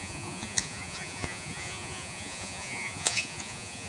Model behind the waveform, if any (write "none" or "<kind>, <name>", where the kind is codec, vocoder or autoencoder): vocoder, Vocos